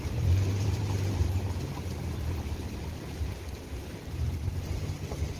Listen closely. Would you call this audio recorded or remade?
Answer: remade